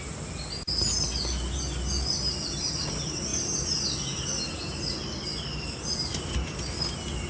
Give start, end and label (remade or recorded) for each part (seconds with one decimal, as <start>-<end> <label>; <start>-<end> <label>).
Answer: 0.0-7.3 recorded